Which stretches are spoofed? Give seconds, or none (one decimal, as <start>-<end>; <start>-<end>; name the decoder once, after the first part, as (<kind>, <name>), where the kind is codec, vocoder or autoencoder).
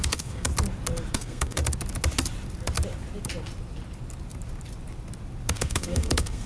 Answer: 0.0-0.5 (codec, SNAC); 1.1-1.6; 5.5-6.5